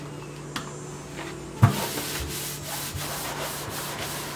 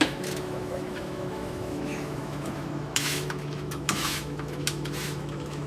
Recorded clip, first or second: first